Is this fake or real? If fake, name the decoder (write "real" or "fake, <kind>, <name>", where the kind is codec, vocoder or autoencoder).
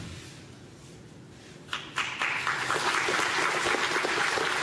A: real